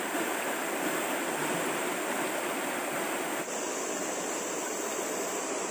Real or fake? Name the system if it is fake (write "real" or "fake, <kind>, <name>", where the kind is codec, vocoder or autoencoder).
real